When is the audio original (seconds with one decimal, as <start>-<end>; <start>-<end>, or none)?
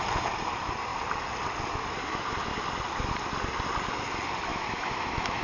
0.0-4.5